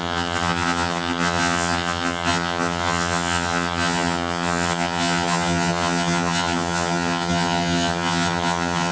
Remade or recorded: remade